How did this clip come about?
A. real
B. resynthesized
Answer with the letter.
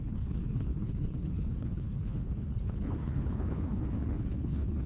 B